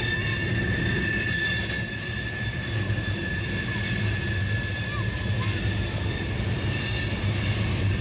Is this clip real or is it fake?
real